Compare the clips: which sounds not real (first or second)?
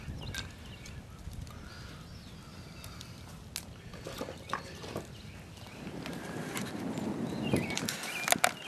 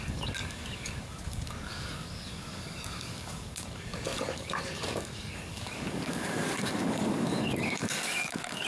second